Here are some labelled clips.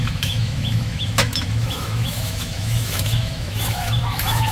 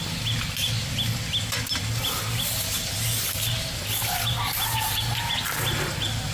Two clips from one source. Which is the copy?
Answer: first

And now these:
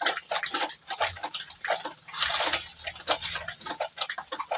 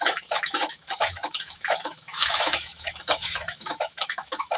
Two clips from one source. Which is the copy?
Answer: second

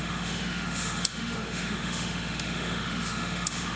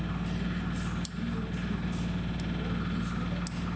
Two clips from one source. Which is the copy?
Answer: first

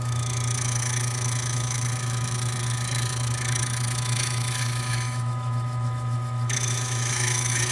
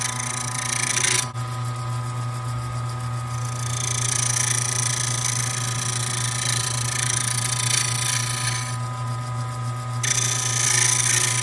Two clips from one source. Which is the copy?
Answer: first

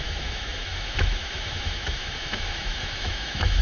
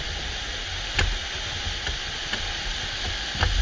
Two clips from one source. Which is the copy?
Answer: first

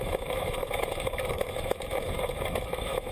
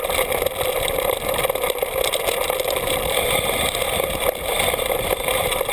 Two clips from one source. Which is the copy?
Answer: first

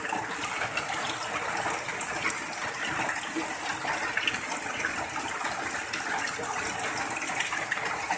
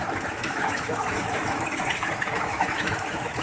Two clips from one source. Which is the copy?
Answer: second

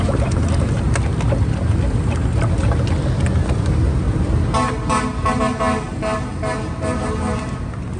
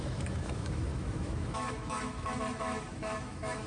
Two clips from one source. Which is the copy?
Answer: second